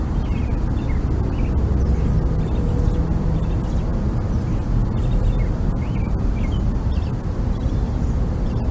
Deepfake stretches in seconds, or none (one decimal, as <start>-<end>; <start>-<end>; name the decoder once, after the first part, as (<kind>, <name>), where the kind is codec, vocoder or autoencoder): none